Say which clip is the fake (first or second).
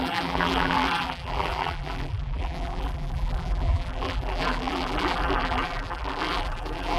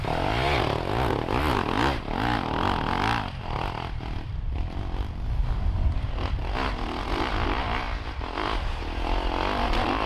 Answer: first